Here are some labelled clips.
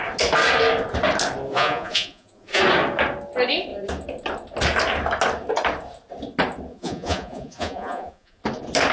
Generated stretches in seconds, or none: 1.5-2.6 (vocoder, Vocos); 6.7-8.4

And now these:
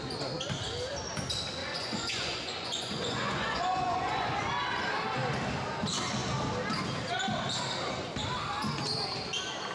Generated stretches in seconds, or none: 1.6-4.4 (vocoder, Vocos)

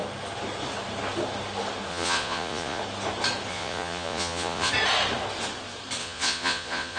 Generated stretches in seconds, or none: 1.9-2.8 (vocoder, Vocos); 3.5-4.7; 6.0-7.0

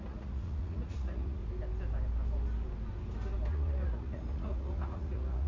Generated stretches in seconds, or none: 0.0-1.4 (vocoder, Vocos); 3.5-5.5

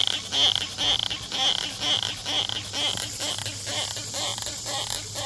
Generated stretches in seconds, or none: none

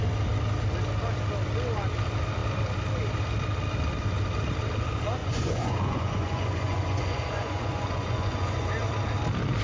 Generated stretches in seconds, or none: 5.2-8.7 (vocoder, Vocos)

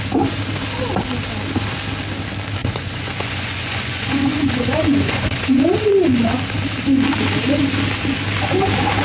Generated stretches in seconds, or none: 2.6-5.6 (vocoder, Vocos)

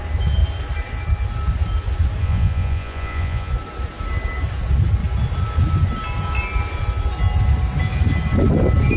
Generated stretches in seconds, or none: 2.2-3.5 (vocoder, Vocos)